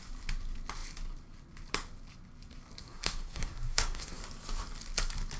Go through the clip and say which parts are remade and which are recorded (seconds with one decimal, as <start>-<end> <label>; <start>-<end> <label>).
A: 0.0-2.8 recorded; 2.8-4.2 remade; 4.2-5.4 recorded